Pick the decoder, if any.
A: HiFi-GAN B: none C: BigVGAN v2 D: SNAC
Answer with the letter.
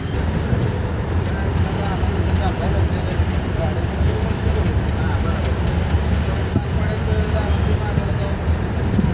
B